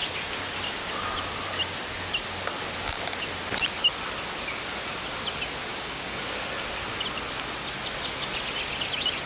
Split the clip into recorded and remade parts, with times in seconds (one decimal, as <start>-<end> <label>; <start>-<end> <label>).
0.0-5.7 recorded; 5.7-6.2 remade; 6.2-9.3 recorded